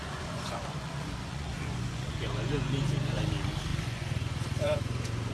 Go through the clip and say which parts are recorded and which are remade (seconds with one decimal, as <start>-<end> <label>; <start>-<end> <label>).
0.0-3.2 remade; 3.2-3.7 recorded; 3.7-5.3 remade